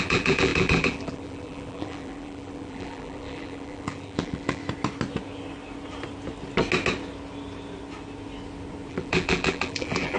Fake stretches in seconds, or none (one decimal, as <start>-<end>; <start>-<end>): 0.0-4.6; 8.9-10.2